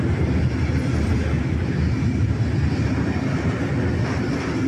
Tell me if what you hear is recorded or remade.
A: recorded